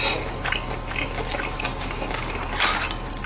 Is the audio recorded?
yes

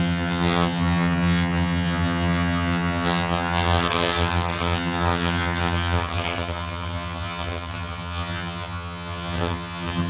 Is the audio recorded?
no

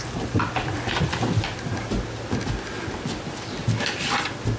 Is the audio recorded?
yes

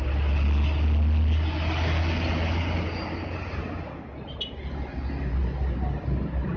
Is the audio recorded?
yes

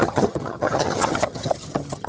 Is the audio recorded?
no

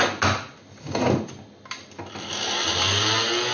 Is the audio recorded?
yes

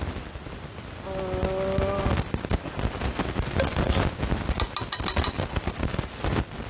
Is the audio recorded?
yes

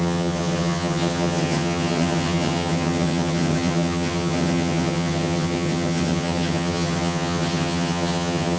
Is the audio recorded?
no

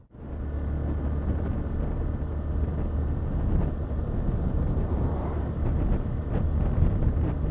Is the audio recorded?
yes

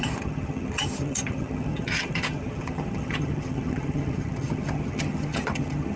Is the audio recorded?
no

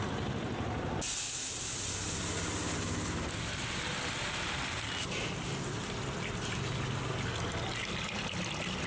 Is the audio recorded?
yes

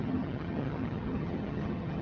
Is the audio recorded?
no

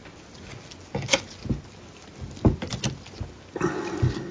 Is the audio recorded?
yes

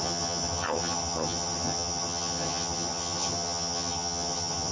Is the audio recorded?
no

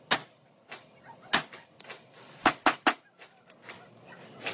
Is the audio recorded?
yes